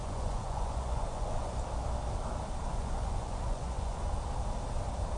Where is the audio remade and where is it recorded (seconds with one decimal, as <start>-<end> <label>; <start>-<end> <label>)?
0.0-1.6 remade; 1.6-2.7 recorded; 2.7-4.1 remade; 4.1-5.2 recorded